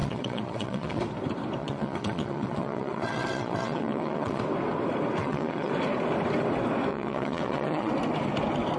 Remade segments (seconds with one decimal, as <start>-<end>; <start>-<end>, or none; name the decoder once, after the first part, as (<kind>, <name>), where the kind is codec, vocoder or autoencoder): 0.0-1.0 (vocoder, WaveNeXt); 1.6-4.4; 5.2-5.7; 6.9-7.9